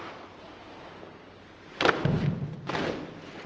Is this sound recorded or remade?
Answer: recorded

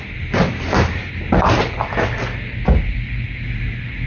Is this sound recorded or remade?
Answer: recorded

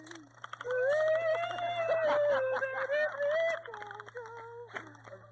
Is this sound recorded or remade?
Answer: recorded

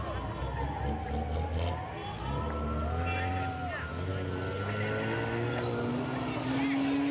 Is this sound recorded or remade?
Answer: recorded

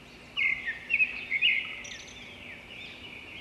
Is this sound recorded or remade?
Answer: recorded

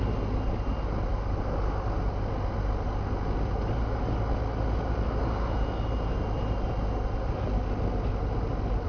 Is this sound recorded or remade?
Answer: recorded